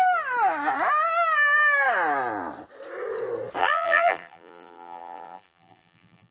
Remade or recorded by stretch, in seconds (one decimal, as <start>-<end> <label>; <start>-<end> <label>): 0.0-3.6 recorded; 3.6-6.3 remade